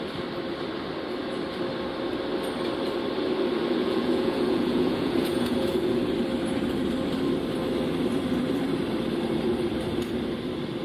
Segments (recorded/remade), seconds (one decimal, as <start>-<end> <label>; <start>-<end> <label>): 0.0-3.8 recorded; 3.8-6.0 remade; 6.0-10.8 recorded